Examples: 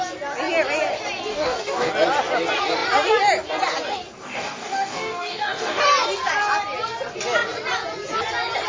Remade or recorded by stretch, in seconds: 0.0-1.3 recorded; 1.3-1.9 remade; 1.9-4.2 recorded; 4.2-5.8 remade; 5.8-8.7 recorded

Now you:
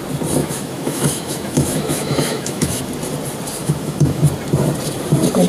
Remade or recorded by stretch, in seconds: 0.0-0.4 recorded; 0.4-2.8 remade; 2.8-3.6 recorded; 3.6-4.2 remade; 4.2-5.5 recorded

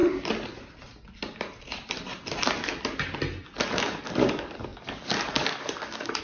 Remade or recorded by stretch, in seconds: 0.0-3.7 recorded; 3.7-6.2 remade